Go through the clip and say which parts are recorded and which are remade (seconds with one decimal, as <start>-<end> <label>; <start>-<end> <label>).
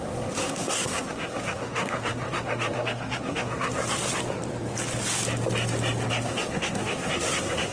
0.0-3.8 remade; 3.8-6.1 recorded; 6.1-7.7 remade